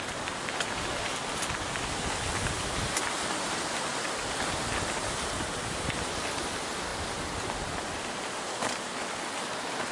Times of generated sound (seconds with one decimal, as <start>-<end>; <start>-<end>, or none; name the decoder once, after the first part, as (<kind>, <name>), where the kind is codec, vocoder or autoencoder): none